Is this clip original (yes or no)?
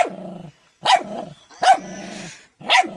yes